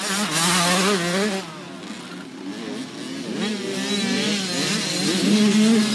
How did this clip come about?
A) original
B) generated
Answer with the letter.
A